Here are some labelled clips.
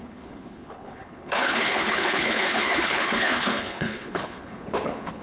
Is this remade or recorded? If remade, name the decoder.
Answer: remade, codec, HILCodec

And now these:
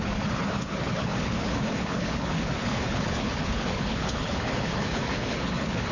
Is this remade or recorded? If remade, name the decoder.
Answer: remade, codec, HILCodec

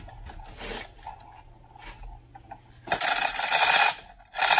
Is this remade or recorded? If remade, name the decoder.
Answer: recorded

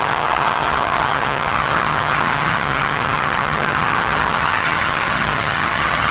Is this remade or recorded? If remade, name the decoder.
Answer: remade, vocoder, HiFi-GAN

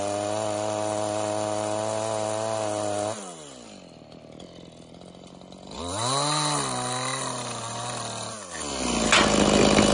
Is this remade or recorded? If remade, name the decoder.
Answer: recorded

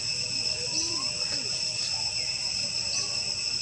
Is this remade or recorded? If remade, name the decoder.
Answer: remade, vocoder, BigVGAN v2